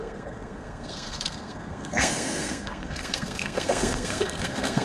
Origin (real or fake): fake